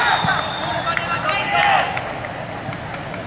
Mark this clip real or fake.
real